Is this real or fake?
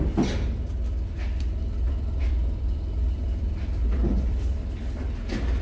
fake